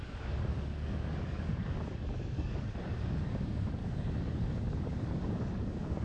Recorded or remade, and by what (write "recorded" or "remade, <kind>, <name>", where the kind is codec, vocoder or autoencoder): remade, codec, DAC